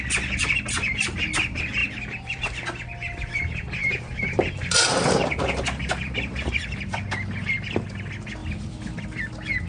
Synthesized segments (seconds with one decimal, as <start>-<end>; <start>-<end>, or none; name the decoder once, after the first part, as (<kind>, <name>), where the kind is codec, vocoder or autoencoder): 1.8-2.4 (vocoder, BigVGAN v2); 3.8-7.0; 8.4-9.2